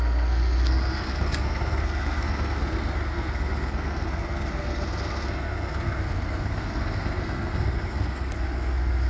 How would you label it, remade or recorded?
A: remade